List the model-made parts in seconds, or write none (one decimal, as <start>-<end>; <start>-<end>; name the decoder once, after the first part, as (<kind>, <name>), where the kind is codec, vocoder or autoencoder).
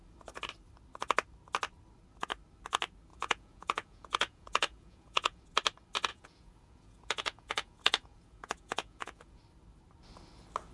3.1-5.4 (vocoder, Vocos); 6.1-9.4